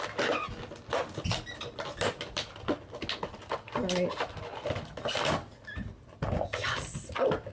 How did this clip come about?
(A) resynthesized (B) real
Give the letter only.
B